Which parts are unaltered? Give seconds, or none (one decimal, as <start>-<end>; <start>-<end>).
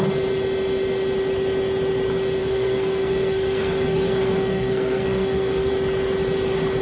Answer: 0.0-2.4; 5.7-6.8